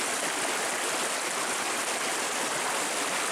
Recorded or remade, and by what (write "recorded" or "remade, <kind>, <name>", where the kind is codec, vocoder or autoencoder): recorded